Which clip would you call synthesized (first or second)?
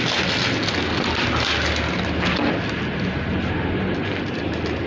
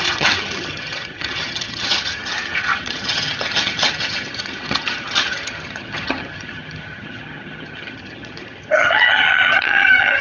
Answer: second